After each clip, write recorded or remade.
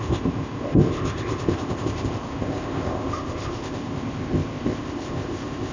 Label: remade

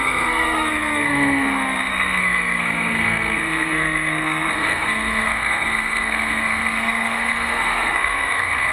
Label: remade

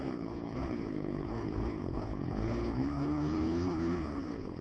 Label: remade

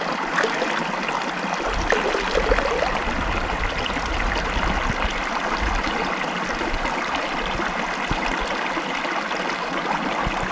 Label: recorded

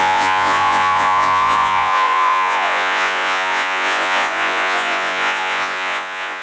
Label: remade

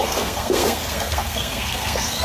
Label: remade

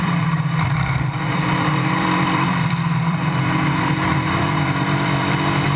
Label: remade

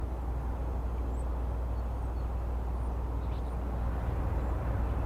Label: recorded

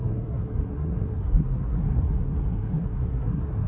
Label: remade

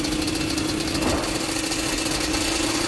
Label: recorded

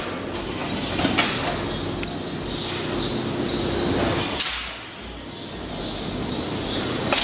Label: recorded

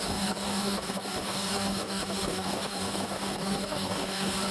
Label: remade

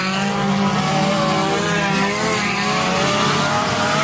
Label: recorded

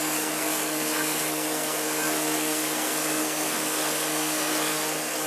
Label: remade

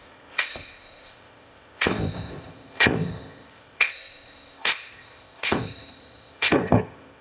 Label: remade